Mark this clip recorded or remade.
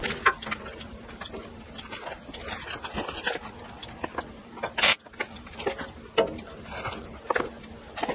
recorded